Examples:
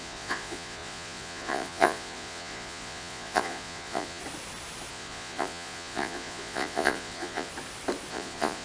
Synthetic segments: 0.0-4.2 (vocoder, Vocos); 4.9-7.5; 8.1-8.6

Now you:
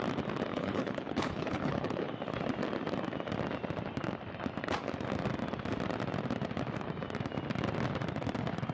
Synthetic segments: 0.5-2.1 (codec, HILCodec)

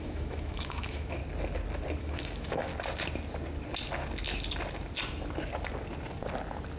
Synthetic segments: 0.0-1.2 (autoencoder, DAC-VAE); 2.0-2.7

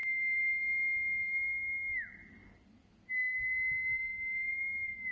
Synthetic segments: none